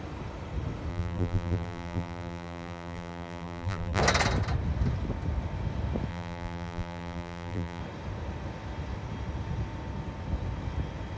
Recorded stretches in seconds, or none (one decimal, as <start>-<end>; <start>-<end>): 0.0-0.9; 4.0-6.1; 7.8-11.2